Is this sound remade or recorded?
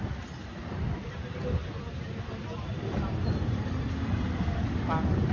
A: recorded